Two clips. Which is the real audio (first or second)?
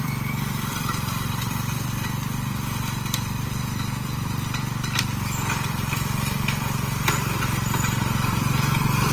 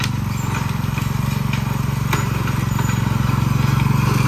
second